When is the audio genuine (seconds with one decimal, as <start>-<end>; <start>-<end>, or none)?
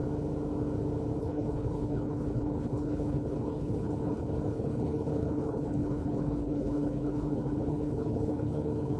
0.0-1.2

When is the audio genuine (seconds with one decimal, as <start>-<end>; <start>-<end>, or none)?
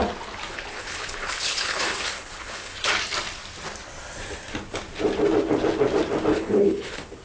0.0-0.5; 2.9-6.3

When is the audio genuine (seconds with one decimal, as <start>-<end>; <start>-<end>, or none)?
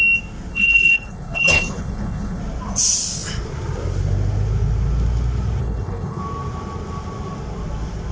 0.0-0.5; 2.4-5.6; 6.2-8.1